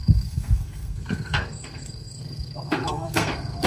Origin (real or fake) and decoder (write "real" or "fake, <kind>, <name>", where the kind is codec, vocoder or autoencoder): fake, codec, SNAC